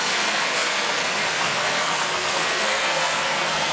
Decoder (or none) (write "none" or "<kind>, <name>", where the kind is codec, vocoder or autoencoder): codec, SNAC